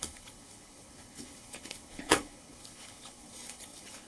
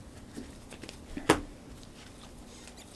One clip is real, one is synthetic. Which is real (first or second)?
second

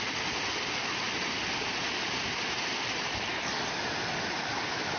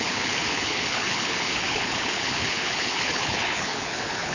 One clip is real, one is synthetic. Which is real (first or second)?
first